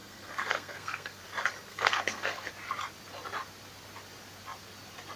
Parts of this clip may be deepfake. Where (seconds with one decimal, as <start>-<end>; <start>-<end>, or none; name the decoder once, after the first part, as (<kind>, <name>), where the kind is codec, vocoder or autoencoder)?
0.0-1.2 (codec, SNAC); 1.7-2.5